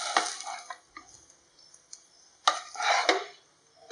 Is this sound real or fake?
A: real